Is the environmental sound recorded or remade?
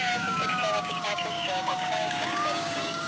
remade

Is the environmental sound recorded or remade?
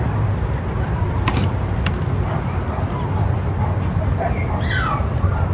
recorded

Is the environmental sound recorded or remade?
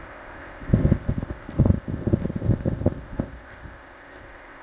remade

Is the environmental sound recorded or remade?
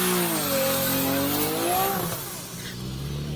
recorded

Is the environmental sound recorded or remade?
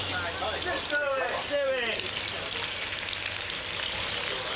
recorded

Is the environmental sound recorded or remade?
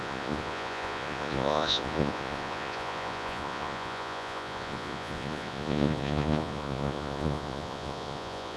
remade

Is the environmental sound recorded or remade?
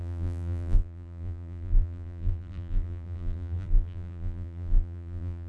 remade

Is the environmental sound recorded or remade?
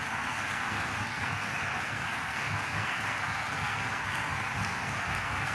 remade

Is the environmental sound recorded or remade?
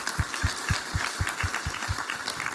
recorded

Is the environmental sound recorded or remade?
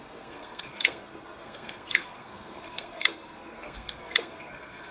remade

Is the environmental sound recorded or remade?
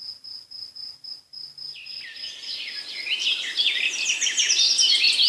recorded